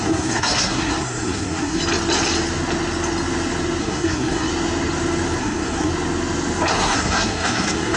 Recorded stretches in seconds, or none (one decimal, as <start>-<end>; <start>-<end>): 1.8-3.8; 4.5-5.4; 5.9-6.7